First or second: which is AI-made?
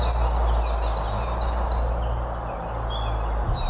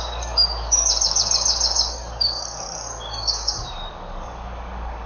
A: second